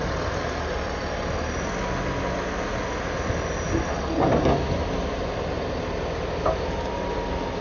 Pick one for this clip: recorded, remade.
recorded